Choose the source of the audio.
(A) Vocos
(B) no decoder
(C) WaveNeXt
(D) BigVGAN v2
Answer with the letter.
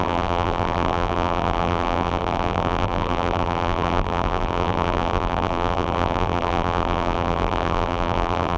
D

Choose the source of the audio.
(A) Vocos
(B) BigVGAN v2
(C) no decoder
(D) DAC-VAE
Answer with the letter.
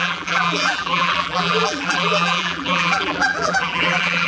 B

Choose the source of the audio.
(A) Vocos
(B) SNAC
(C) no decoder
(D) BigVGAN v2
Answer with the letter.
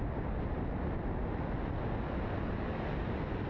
C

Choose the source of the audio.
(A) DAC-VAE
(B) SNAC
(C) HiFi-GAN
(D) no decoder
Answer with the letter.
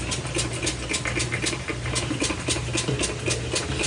D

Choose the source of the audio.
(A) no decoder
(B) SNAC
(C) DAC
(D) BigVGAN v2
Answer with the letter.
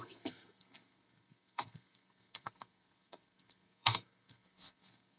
B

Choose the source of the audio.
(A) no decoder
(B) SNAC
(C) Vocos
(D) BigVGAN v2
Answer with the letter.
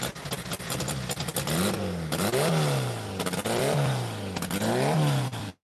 A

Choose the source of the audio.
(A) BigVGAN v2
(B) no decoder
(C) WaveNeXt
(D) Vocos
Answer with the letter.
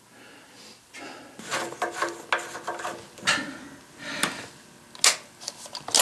B